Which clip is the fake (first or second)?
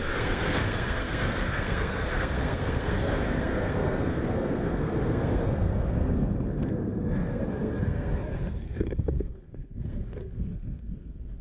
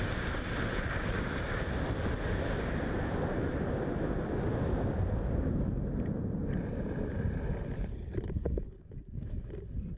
first